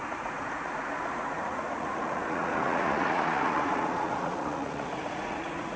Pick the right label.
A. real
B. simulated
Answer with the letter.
B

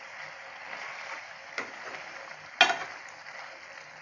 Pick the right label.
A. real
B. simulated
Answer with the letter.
A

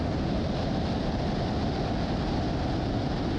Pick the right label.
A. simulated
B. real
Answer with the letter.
B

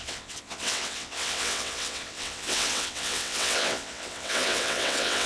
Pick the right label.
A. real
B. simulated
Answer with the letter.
B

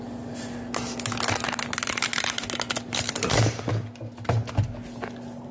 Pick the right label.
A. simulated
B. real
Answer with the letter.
B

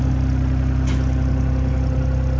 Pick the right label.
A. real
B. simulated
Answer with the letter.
A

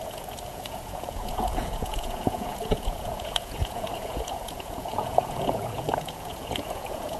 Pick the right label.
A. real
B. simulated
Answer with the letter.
B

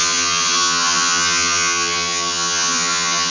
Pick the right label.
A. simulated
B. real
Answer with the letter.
A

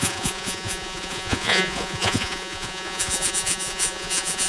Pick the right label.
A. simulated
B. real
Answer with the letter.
A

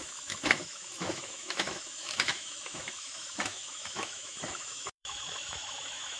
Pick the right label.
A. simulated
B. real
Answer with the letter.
A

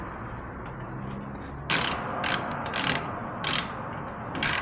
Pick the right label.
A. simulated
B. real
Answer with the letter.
B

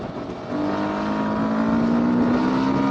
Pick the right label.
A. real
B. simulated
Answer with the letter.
A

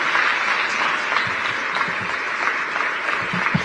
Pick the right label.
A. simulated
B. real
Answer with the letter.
B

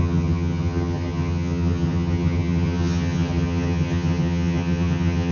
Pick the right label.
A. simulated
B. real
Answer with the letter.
A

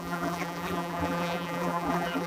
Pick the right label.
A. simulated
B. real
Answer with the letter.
A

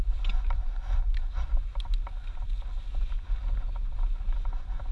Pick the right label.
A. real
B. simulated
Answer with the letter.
A